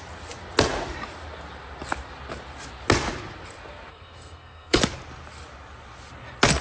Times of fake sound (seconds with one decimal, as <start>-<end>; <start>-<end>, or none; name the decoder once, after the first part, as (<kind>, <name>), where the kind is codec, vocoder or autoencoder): 3.9-4.8 (codec, SNAC)